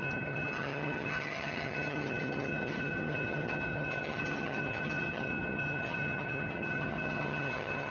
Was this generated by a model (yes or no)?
yes